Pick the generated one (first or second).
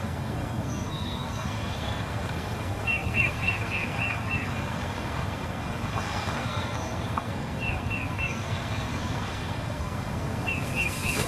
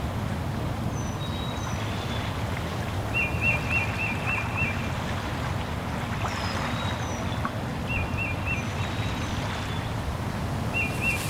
first